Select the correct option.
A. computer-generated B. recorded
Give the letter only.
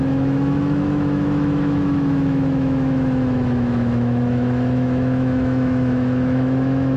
A